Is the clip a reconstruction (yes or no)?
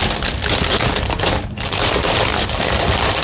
no